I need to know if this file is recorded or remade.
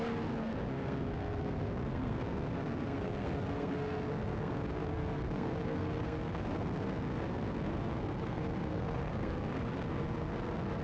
remade